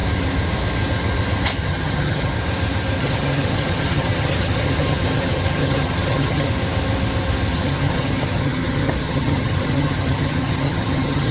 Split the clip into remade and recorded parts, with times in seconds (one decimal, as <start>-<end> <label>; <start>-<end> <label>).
0.0-1.6 recorded; 1.6-2.3 remade; 2.3-3.0 recorded; 3.0-6.5 remade; 6.5-7.5 recorded; 7.5-11.3 remade